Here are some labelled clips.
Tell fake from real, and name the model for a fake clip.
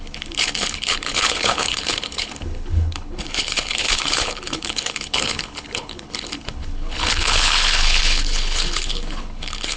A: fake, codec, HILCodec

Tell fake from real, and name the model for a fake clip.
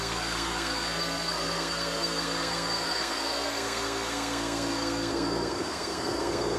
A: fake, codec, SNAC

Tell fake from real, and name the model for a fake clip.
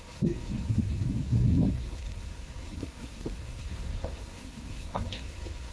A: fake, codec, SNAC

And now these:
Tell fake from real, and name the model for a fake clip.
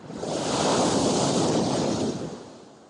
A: real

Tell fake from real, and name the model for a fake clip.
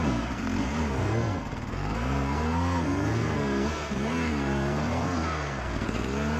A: fake, codec, SNAC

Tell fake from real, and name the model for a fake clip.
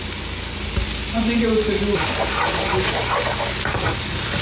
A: real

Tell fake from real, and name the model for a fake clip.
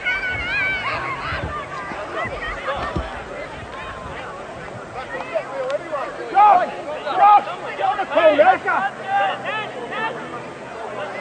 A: real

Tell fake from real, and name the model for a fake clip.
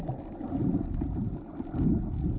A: real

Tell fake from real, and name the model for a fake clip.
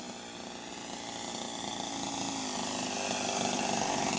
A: real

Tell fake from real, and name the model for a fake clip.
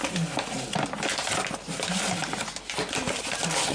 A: real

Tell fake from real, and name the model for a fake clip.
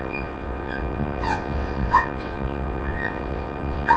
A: fake, vocoder, WaveNeXt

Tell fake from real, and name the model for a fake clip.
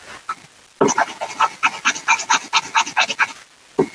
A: real